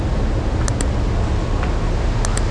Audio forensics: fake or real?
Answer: real